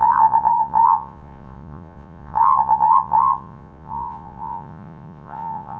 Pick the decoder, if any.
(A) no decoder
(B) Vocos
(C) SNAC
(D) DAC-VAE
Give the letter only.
B